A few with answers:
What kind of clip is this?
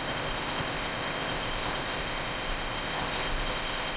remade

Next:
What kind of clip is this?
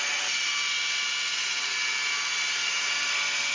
recorded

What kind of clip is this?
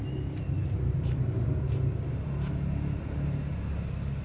recorded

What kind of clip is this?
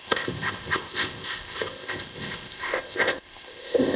remade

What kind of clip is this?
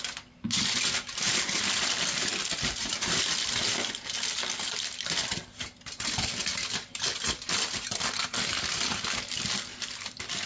recorded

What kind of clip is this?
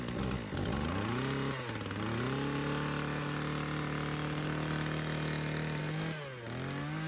recorded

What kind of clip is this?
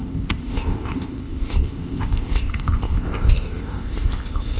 remade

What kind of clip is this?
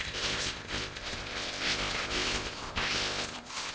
remade